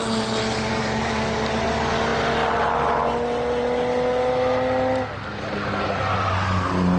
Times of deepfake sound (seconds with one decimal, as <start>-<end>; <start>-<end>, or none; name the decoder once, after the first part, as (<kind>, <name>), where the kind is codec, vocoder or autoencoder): 0.7-1.4 (codec, DAC)